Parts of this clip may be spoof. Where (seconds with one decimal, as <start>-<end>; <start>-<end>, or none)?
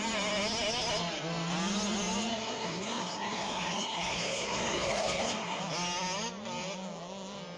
2.3-5.6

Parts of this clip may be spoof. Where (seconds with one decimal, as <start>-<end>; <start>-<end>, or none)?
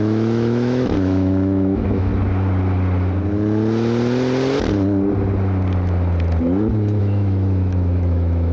0.0-2.1; 7.0-8.5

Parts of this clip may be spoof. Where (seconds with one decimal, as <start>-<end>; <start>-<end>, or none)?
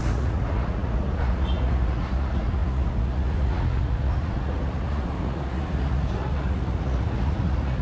0.0-7.8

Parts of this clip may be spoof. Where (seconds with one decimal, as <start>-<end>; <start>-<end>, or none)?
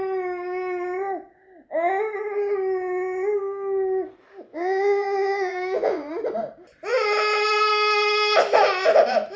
4.5-6.1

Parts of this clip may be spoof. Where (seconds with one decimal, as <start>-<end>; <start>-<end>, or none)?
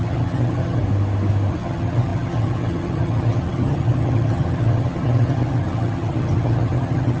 0.0-0.8; 1.5-7.2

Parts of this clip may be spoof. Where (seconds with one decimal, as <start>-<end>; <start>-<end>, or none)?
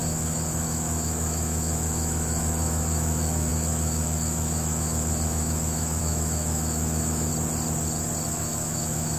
0.0-7.3; 8.3-9.2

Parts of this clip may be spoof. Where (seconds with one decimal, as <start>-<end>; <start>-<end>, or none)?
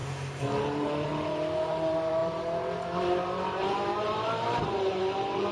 0.6-1.1; 1.7-5.5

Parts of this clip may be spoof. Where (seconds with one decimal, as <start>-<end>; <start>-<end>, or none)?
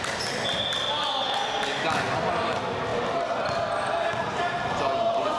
none